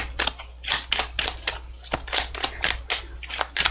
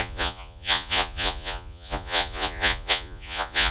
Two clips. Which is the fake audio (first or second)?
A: second